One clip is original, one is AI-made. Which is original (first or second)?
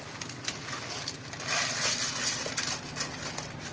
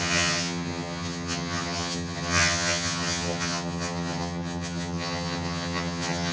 first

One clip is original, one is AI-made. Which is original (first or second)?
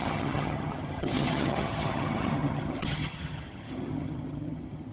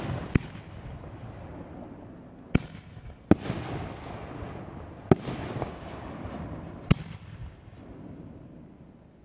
second